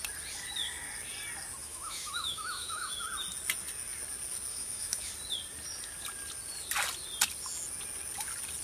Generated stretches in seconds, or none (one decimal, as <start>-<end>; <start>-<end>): 1.6-2.9; 4.5-5.1